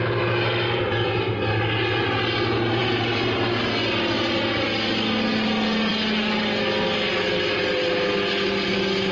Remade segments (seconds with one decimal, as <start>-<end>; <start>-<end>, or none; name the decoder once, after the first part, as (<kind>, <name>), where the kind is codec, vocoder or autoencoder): 2.8-3.7 (vocoder, BigVGAN v2)